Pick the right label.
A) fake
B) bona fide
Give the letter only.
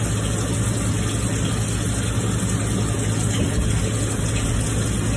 B